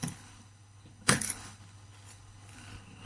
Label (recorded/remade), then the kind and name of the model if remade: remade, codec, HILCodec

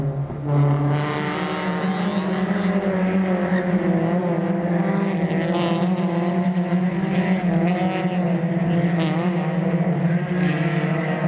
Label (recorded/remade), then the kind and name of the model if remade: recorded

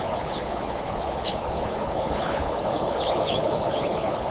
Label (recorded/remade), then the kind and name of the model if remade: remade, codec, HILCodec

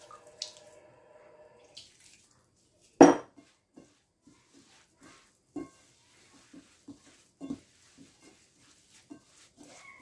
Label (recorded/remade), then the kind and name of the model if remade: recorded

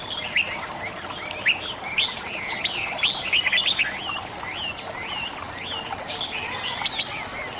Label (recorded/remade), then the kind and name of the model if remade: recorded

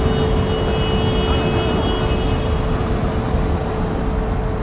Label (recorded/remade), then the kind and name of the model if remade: recorded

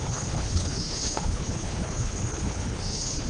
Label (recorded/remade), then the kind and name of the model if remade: remade, codec, HILCodec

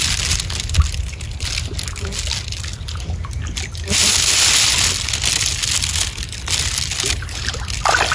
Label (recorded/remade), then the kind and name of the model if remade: recorded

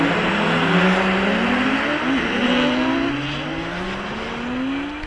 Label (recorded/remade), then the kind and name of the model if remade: recorded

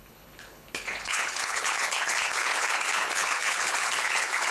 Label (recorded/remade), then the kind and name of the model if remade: remade, codec, HILCodec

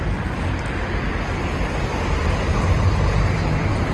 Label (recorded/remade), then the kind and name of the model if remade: recorded